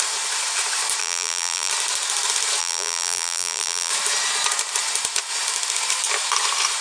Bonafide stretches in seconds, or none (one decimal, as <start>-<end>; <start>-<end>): 0.0-1.0; 1.7-2.6; 3.9-6.8